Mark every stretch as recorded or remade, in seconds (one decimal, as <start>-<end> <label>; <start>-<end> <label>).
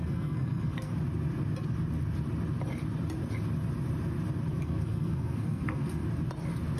0.0-0.9 remade; 0.9-4.5 recorded; 4.5-6.0 remade; 6.0-6.8 recorded